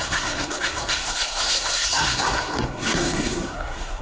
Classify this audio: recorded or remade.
remade